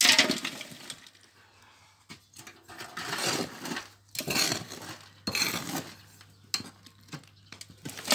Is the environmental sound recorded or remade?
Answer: recorded